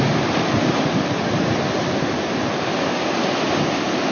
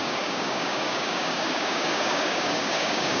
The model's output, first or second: second